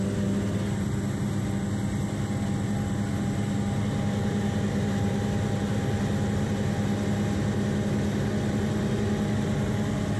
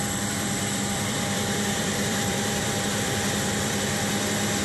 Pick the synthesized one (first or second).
second